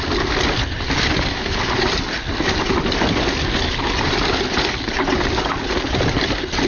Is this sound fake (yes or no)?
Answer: no